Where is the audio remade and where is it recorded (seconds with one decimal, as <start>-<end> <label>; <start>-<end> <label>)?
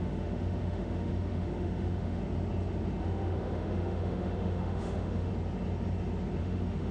0.0-2.2 remade; 2.2-3.0 recorded; 3.0-5.3 remade; 5.3-6.4 recorded; 6.4-6.9 remade